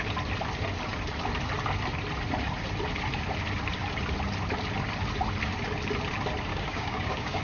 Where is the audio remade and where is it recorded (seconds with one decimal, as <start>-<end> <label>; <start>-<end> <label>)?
0.0-6.5 recorded; 6.5-7.4 remade